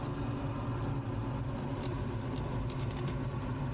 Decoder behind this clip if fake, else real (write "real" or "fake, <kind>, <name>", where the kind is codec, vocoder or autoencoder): real